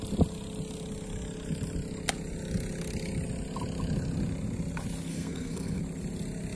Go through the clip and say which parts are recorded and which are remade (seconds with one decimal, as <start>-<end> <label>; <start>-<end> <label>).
0.0-5.1 recorded; 5.1-5.8 remade; 5.8-6.6 recorded